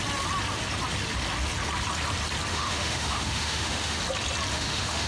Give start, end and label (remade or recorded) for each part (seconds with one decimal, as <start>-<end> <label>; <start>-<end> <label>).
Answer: 0.0-2.5 recorded; 2.5-4.0 remade; 4.0-4.5 recorded; 4.5-5.1 remade